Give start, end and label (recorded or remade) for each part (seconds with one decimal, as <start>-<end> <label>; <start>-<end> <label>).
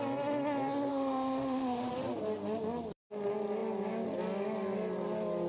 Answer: 0.0-0.9 recorded; 0.9-1.9 remade; 1.9-5.5 recorded